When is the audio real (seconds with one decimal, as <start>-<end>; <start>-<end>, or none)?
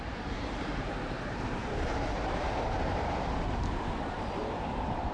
none